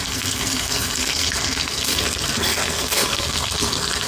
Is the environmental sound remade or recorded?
remade